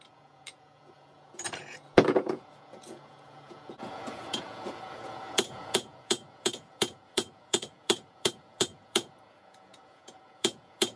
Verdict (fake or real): fake